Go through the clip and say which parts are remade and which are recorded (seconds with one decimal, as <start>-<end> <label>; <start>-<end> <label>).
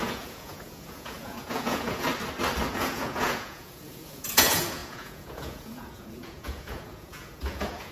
0.0-2.1 remade; 2.1-2.7 recorded; 2.7-7.9 remade